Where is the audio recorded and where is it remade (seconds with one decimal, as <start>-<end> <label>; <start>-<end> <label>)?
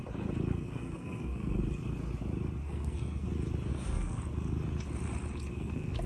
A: 0.0-0.5 recorded; 0.5-1.6 remade; 1.6-2.6 recorded; 2.6-3.3 remade; 3.3-3.7 recorded; 3.7-4.2 remade; 4.2-5.5 recorded; 5.5-6.1 remade